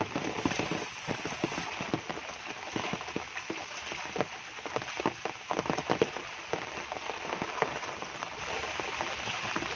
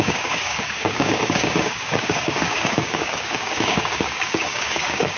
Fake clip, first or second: second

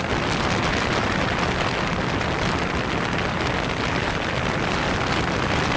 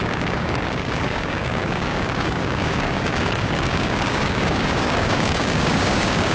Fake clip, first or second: second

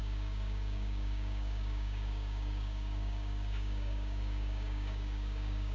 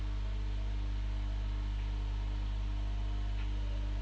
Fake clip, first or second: first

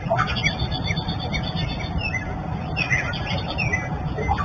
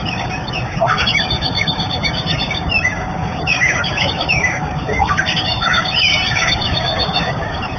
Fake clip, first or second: second